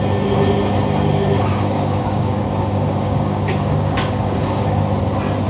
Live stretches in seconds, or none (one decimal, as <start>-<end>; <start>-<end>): 0.0-1.5; 4.8-5.5